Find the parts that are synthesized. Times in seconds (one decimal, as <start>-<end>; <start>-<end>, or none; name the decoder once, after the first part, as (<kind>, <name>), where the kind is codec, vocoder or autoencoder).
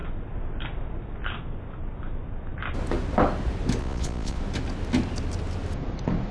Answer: 3.8-4.4 (vocoder, Vocos)